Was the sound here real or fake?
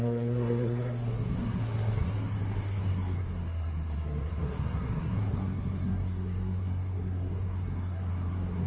fake